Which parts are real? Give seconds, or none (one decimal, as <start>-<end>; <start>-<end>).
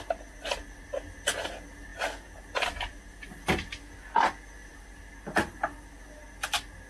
0.0-6.9